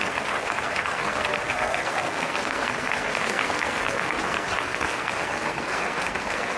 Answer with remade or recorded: remade